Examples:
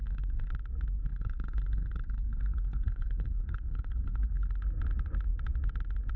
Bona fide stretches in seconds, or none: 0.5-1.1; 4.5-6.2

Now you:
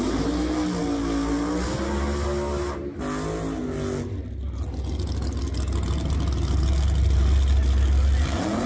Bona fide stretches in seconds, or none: 0.0-8.7

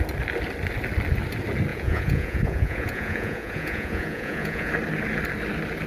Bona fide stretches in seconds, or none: 0.0-1.7; 4.7-5.9

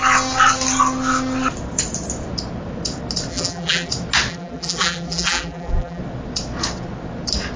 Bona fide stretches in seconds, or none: 0.0-3.3; 3.9-4.3; 6.0-7.6

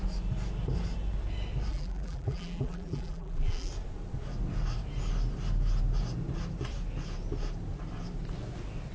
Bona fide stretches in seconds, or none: 0.0-1.7; 3.7-8.9